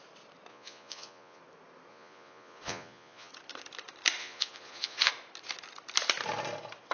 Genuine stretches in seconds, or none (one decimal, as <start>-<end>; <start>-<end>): 0.0-0.5; 1.4-1.9; 3.3-4.2; 5.1-6.9